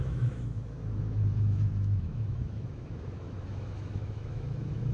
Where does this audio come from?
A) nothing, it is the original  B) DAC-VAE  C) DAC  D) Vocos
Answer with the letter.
B